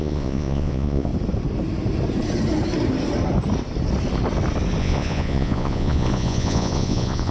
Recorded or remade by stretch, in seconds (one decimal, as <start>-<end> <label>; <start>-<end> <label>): 0.0-1.1 remade; 1.1-4.8 recorded; 4.8-7.3 remade